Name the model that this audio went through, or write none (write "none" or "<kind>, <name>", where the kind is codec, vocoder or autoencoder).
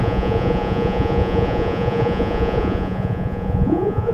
vocoder, Vocos